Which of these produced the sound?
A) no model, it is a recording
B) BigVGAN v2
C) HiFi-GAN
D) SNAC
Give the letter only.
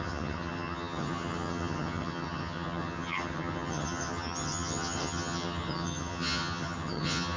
C